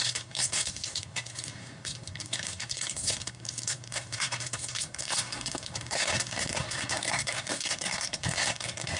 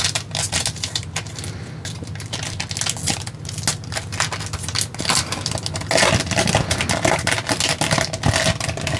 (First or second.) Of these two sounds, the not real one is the first